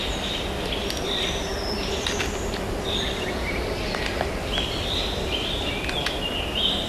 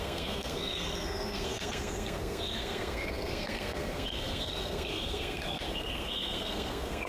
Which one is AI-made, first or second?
second